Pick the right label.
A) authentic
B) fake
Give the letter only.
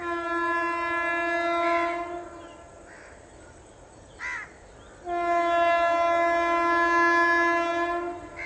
A